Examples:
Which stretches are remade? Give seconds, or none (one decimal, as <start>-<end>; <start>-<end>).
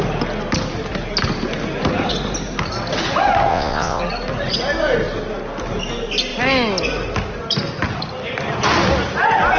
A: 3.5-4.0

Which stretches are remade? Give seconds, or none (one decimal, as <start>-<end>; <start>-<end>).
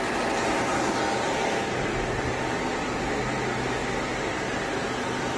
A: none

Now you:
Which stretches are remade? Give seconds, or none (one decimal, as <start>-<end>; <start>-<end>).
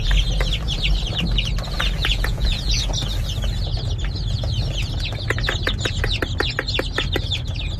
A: 2.0-2.8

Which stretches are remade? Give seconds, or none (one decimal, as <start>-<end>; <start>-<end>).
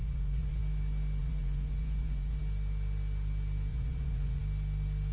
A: 0.0-0.6; 1.2-2.4; 3.7-4.4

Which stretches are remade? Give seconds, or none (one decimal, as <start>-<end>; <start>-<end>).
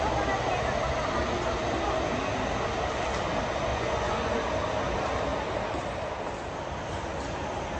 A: 3.7-4.3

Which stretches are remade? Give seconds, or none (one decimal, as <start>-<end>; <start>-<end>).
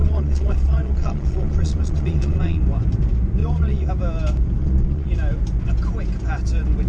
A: 0.0-2.6; 3.4-3.9; 4.6-5.1